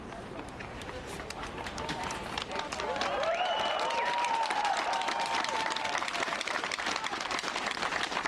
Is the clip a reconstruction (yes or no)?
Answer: yes